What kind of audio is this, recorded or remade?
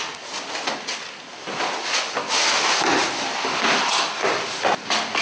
recorded